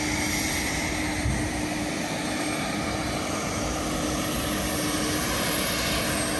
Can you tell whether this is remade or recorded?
recorded